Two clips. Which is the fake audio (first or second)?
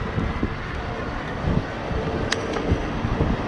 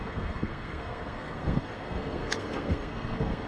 second